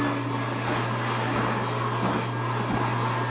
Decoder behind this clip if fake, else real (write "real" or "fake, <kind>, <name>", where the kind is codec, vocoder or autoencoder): real